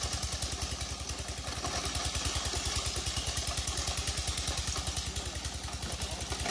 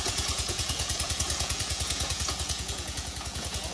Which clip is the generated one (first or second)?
second